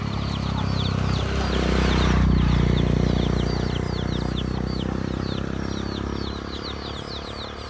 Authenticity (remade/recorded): recorded